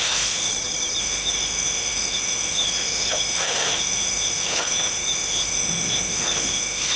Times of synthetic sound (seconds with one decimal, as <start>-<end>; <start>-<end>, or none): 0.0-0.5; 1.0-7.0